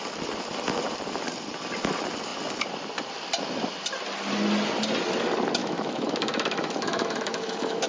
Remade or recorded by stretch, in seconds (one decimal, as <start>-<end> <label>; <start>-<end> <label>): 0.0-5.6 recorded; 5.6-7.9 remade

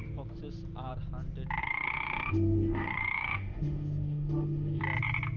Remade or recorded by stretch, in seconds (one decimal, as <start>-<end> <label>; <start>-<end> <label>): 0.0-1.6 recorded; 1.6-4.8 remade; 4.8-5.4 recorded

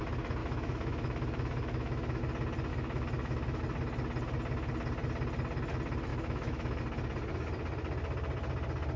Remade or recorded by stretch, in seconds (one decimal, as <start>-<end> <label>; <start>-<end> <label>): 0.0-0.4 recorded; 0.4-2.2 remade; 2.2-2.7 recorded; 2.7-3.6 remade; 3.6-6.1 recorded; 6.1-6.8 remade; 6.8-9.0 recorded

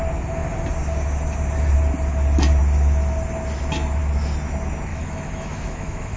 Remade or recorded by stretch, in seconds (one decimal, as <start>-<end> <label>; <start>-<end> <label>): 0.0-4.9 recorded; 4.9-6.2 remade